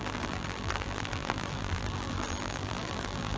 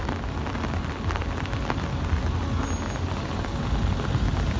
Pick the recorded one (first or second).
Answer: second